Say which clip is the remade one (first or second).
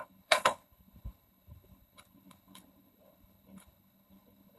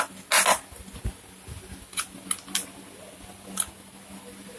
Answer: first